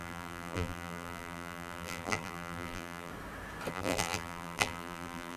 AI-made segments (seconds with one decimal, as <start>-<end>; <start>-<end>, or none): 0.0-3.1; 3.7-5.4

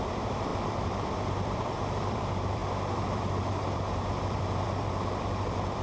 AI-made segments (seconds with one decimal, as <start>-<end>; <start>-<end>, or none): 0.0-5.8

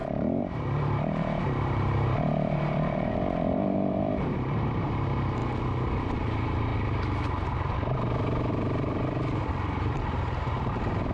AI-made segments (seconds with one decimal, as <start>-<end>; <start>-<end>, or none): 0.0-5.4; 6.0-6.7; 8.5-11.1

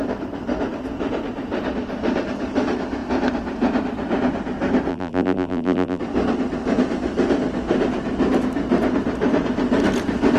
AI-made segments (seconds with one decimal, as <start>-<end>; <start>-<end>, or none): 4.9-6.0

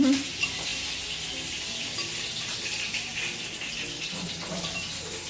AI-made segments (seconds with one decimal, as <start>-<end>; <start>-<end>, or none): 1.8-3.1

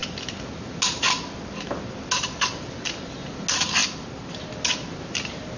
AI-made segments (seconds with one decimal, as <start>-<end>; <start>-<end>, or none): none

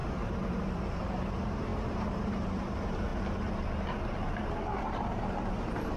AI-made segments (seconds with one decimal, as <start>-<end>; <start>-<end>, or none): 0.5-6.0